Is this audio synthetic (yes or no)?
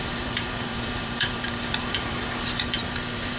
yes